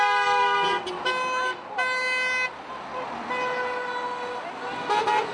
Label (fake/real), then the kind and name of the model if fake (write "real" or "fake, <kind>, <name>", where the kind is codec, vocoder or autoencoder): real